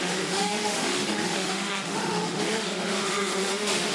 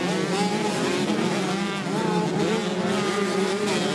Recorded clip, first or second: second